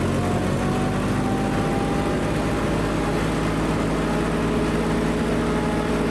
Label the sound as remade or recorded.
recorded